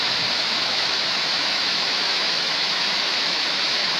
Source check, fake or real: fake